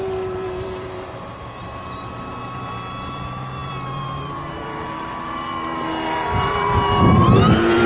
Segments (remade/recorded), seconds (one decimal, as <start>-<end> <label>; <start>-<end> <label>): 0.0-7.9 remade